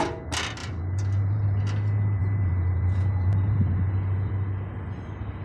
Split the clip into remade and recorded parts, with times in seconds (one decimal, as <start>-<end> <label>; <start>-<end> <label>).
0.0-0.6 recorded; 0.6-1.6 remade; 1.6-2.2 recorded; 2.2-4.3 remade; 4.3-5.4 recorded